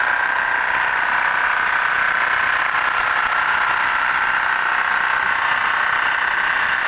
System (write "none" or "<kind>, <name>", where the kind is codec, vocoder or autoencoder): none